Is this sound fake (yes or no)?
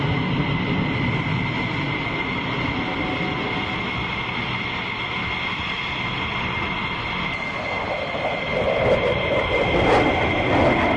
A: no